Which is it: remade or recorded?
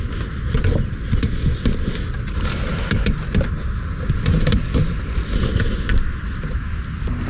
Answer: recorded